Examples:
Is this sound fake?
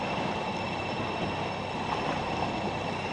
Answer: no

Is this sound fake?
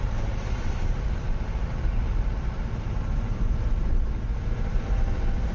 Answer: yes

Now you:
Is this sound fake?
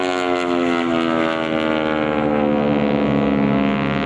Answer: no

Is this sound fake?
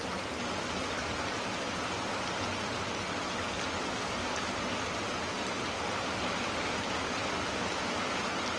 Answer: no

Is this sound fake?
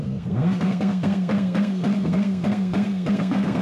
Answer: yes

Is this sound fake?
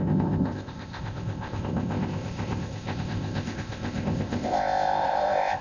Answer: yes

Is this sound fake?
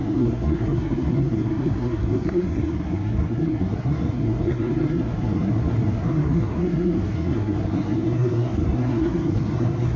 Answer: yes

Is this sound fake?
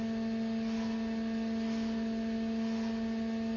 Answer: no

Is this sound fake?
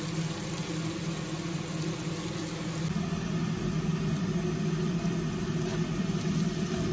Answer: no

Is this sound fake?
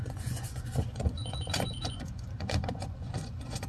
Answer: yes